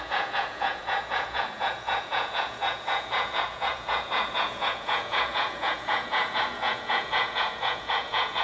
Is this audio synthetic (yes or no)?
yes